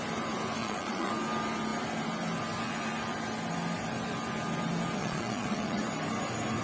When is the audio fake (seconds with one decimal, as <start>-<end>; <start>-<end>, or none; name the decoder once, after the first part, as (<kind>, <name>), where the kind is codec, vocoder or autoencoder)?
0.6-1.1 (vocoder, Vocos); 5.0-5.8